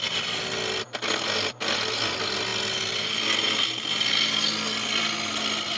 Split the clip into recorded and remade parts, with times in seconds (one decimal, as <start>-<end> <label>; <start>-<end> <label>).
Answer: 0.0-5.8 recorded